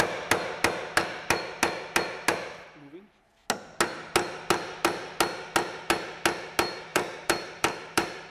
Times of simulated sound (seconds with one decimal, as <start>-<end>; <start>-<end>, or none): 6.9-8.3